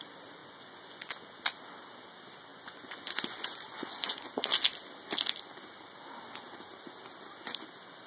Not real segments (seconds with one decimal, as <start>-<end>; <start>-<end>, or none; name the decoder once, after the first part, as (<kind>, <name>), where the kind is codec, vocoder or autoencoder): 0.4-1.2 (vocoder, Vocos); 2.5-4.3